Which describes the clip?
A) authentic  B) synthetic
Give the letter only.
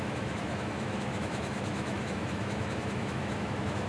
B